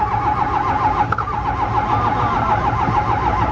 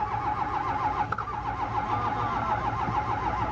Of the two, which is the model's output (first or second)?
first